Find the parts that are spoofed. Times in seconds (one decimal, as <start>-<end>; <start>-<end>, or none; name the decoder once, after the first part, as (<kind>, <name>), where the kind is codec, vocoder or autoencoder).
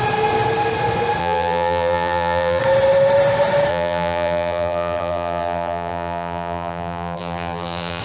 1.2-2.6 (vocoder, BigVGAN v2); 3.7-8.0